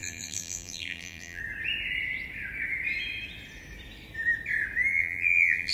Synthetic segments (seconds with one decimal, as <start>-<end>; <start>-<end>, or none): 0.0-1.4; 4.9-5.7